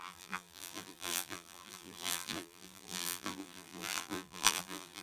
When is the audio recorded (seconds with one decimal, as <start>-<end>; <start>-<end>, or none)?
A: none